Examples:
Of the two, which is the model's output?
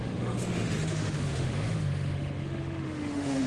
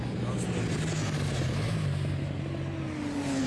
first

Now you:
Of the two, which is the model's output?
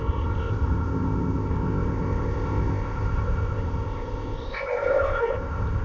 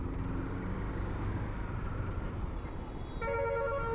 first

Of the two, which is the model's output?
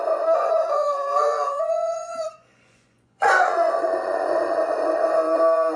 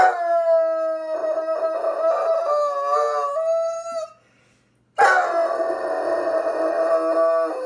first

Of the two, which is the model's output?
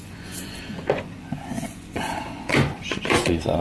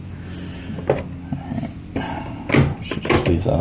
first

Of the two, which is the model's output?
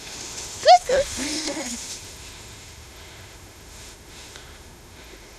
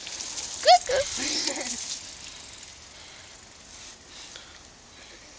first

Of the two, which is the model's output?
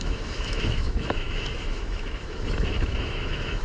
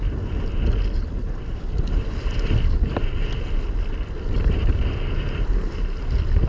first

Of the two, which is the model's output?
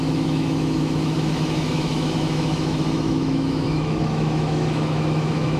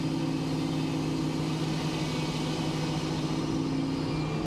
first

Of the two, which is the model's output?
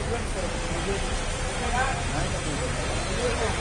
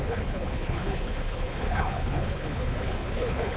second